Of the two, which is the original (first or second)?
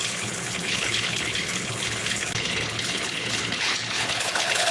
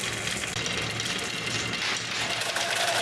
second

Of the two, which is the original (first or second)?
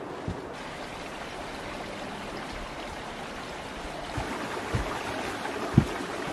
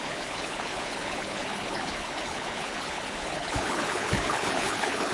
first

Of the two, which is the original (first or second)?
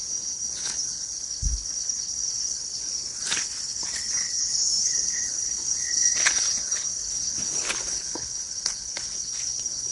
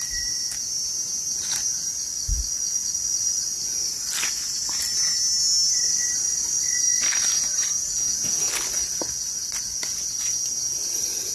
second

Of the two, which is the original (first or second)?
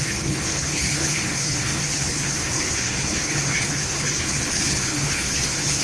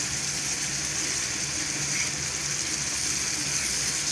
second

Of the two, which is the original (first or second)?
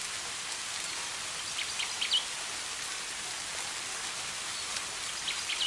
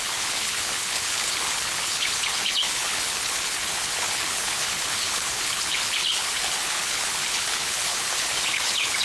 first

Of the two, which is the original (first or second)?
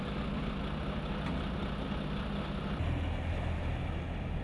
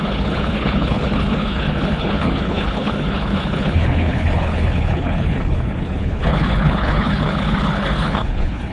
first